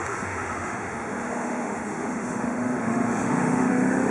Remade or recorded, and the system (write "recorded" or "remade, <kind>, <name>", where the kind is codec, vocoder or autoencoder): remade, autoencoder, DAC-VAE